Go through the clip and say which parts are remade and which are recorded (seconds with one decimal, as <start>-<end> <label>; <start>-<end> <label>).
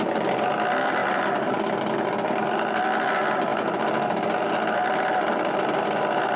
0.0-1.0 recorded; 1.0-1.6 remade; 1.6-6.4 recorded